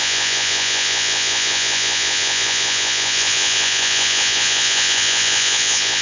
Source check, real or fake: fake